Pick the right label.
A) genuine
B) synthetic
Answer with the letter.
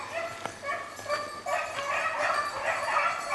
A